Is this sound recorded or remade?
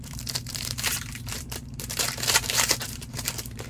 remade